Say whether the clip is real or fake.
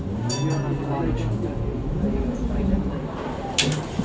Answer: real